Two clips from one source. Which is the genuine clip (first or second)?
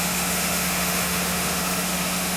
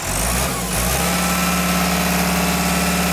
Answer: second